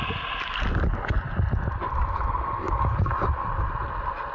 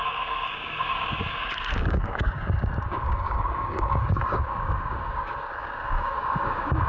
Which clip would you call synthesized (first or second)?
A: second